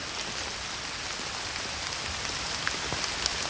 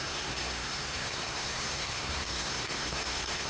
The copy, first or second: second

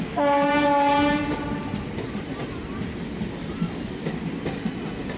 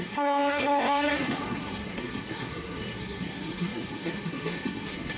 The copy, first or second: second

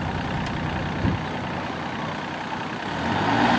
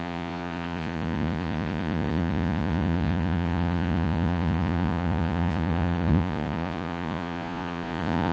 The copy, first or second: second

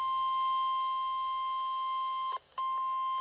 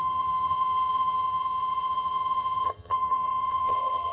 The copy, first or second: second